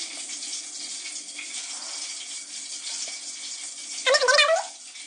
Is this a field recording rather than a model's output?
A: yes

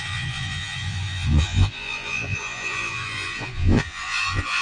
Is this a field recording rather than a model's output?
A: no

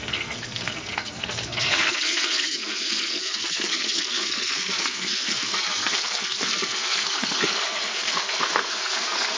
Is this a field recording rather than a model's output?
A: no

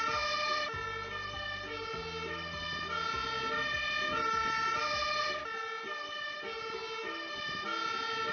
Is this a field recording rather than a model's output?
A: yes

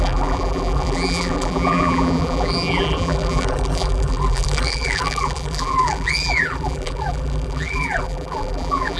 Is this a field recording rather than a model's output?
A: no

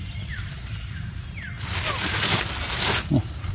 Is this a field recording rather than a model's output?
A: yes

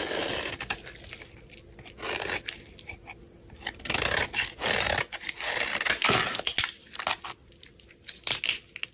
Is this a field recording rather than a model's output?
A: yes